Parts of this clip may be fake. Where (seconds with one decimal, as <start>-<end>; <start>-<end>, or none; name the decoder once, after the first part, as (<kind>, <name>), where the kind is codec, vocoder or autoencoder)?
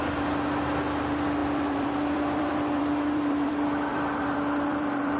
1.4-3.5 (vocoder, BigVGAN v2); 3.9-5.2